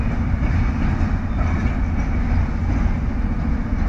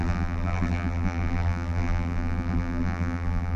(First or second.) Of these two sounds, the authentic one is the first